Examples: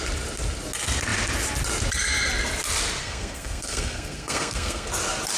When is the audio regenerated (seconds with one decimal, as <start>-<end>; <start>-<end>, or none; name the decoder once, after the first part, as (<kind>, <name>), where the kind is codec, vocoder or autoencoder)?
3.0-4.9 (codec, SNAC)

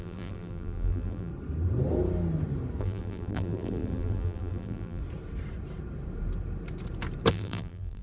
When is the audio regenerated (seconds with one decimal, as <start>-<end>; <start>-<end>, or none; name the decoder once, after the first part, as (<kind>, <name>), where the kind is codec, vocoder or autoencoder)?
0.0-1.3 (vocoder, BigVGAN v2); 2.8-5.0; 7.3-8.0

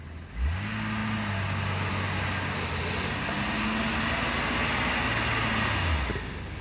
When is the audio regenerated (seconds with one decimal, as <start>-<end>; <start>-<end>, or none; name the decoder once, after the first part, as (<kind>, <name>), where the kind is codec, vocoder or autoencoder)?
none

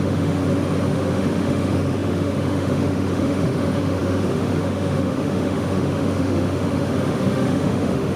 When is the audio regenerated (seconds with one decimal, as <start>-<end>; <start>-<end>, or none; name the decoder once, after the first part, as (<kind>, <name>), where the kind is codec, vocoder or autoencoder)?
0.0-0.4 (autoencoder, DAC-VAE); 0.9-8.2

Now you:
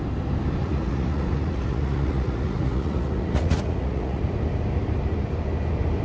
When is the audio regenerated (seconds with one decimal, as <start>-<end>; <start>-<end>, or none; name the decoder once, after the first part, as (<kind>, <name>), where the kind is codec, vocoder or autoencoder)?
0.6-4.2 (vocoder, Vocos)